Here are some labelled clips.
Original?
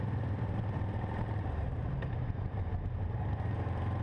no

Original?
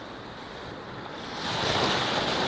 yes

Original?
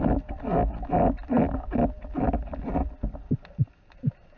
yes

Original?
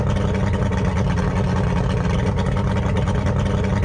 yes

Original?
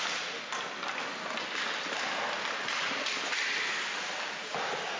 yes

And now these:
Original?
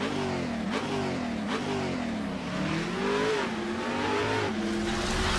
yes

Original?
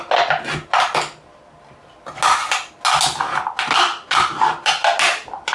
yes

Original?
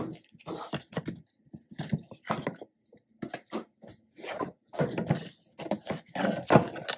yes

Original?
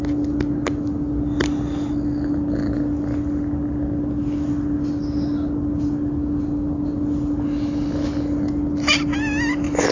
yes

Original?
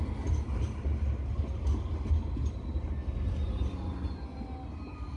yes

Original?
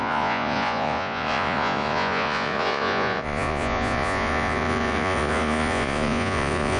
no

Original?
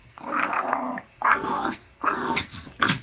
no